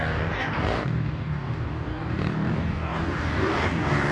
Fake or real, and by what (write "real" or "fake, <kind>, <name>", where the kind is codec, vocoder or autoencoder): fake, codec, DAC